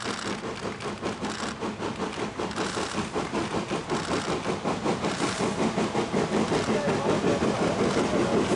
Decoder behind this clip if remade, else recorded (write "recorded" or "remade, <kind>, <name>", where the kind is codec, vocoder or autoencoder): recorded